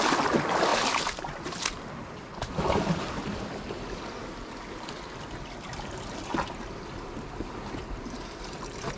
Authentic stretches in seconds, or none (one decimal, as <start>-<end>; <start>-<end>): 0.0-9.0